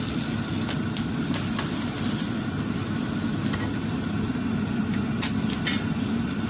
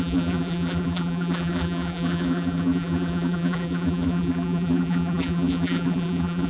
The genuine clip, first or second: first